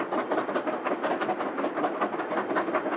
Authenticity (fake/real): real